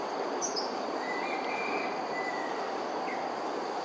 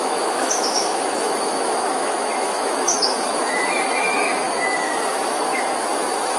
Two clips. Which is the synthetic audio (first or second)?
second